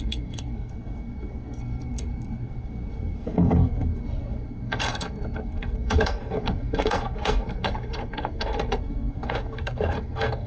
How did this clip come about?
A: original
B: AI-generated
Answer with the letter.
B